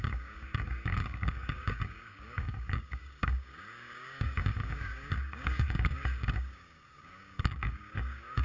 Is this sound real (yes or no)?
no